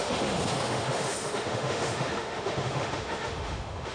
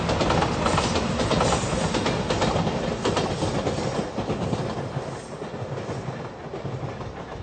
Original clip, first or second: second